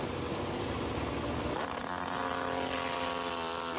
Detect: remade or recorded recorded